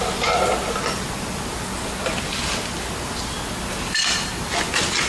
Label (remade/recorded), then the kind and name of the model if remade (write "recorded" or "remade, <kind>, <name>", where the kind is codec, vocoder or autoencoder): recorded